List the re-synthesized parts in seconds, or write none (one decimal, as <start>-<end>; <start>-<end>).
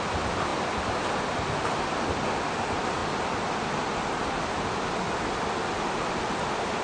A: none